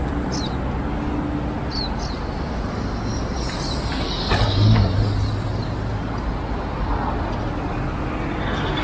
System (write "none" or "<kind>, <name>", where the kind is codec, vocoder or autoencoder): none